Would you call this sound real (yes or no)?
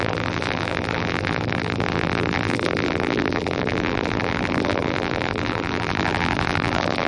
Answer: no